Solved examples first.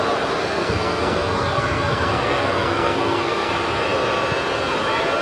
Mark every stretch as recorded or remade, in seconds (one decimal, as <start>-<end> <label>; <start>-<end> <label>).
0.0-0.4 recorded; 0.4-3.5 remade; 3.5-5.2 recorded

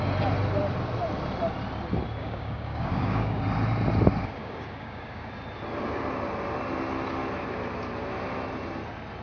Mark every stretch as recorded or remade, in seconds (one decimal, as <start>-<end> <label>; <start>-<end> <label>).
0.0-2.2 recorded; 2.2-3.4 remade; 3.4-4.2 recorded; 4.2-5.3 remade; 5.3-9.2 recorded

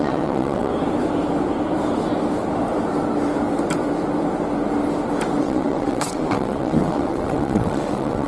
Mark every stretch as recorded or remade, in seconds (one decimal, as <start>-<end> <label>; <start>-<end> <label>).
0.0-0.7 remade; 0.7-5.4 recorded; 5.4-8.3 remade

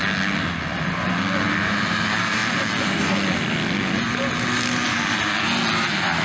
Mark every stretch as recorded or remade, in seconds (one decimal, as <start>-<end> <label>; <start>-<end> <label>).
0.0-2.4 recorded; 2.4-3.0 remade; 3.0-6.2 recorded